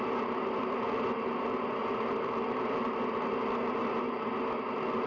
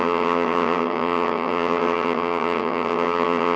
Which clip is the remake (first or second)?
second